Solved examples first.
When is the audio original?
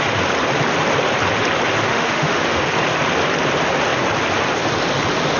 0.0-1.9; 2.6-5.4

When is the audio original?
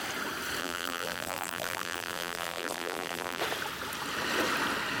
0.0-0.6; 3.4-5.0